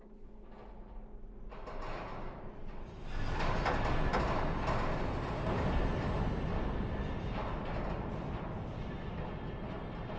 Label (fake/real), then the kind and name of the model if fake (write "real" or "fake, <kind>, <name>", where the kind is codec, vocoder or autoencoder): real